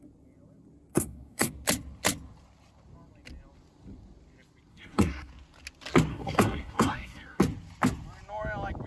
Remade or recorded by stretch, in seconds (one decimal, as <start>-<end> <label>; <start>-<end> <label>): 0.0-0.9 recorded; 0.9-1.5 remade; 1.5-4.7 recorded; 4.7-5.3 remade; 5.3-6.1 recorded; 6.1-7.4 remade; 7.4-8.9 recorded